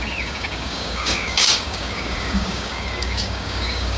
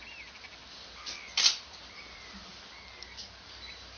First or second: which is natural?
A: second